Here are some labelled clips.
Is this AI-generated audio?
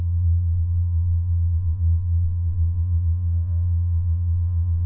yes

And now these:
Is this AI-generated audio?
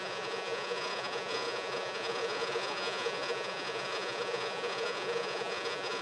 yes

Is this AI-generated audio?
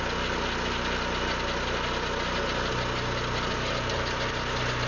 no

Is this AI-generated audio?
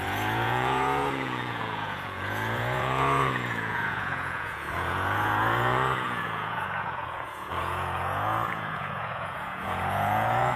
yes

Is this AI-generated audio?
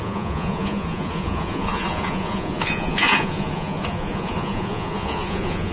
yes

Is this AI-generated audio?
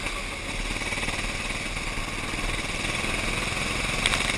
no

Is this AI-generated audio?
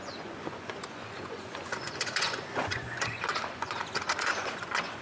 yes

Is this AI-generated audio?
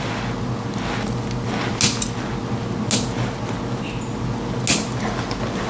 no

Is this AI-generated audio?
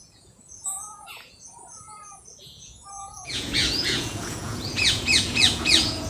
yes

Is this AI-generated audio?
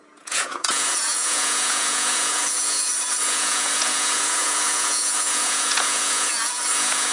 yes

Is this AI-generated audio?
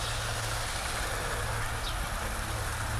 no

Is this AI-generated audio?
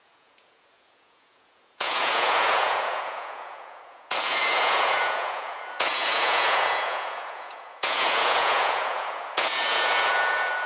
yes